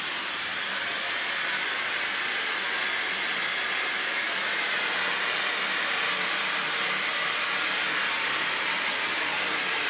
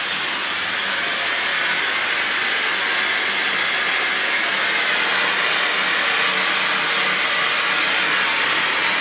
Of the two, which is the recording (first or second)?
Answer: second